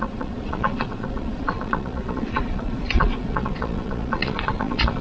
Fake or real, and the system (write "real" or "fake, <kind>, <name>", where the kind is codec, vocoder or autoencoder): fake, vocoder, Vocos